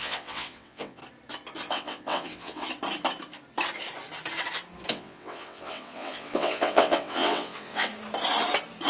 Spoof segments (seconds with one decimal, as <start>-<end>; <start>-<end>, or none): 0.0-1.0; 1.7-2.6; 4.9-7.9

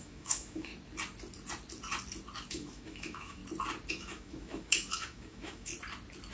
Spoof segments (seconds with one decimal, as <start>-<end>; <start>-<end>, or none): 0.0-0.7; 2.5-3.4; 3.9-5.7